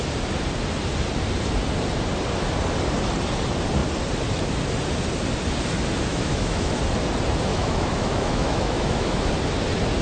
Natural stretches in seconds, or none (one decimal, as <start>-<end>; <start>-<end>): 0.0-6.1; 6.8-7.5; 9.3-10.0